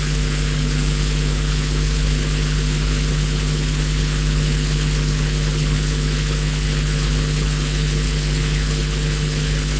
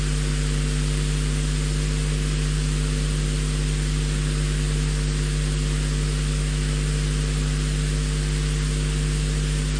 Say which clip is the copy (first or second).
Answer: first